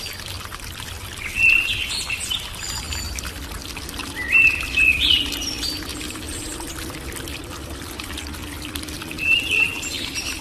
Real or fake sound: fake